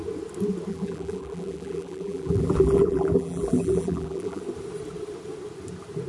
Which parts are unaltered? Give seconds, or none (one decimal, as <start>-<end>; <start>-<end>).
0.0-0.7; 4.4-6.1